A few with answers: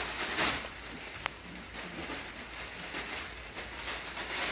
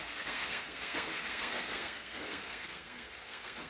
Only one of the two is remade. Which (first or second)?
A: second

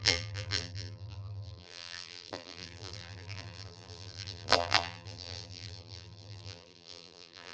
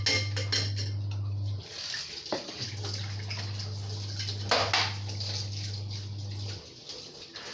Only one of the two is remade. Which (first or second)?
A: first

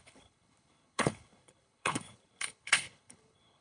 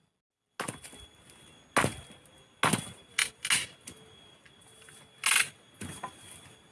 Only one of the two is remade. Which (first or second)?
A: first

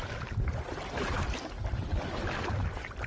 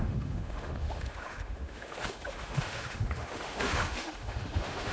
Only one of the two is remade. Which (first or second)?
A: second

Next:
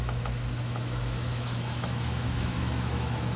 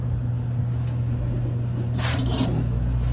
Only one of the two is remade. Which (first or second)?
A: first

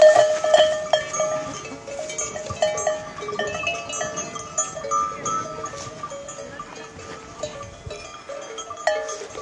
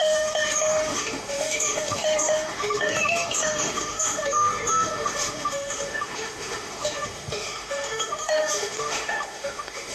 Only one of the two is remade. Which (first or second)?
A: second